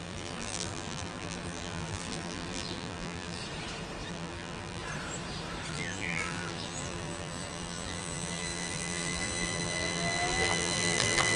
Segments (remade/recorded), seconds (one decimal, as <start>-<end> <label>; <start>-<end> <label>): 0.0-3.4 remade; 3.4-4.1 recorded; 4.1-4.8 remade; 4.8-5.7 recorded; 5.7-11.4 remade

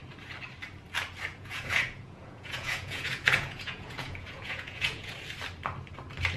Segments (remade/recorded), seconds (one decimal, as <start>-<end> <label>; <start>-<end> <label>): 0.0-1.3 recorded; 1.3-5.1 remade; 5.1-6.4 recorded

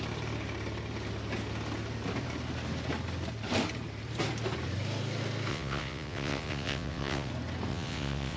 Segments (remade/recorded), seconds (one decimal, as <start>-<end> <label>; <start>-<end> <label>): 0.0-5.5 recorded; 5.5-7.3 remade; 7.3-7.7 recorded; 7.7-8.4 remade

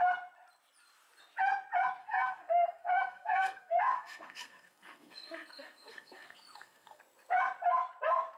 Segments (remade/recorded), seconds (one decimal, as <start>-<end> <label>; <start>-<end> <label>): 0.0-2.0 recorded; 2.0-7.0 remade; 7.0-8.4 recorded

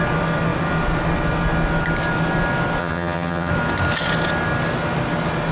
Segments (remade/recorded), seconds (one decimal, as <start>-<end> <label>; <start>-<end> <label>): 0.0-2.8 recorded; 2.8-3.5 remade; 3.5-5.5 recorded

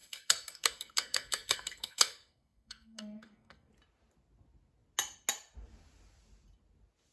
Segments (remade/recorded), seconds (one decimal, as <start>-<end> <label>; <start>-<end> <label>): 0.0-3.7 remade; 3.7-7.1 recorded